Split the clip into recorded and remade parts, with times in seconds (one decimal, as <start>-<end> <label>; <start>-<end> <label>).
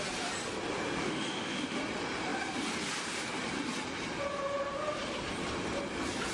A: 0.0-1.0 recorded; 1.0-1.8 remade; 1.8-6.3 recorded